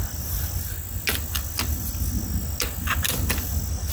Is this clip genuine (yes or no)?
yes